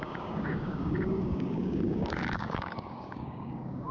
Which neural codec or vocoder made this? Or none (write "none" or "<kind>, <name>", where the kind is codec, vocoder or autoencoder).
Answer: codec, DAC